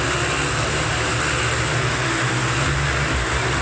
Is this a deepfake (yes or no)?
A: no